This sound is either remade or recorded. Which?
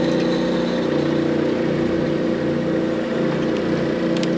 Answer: recorded